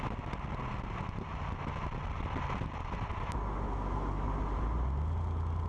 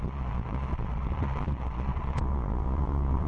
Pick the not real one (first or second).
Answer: second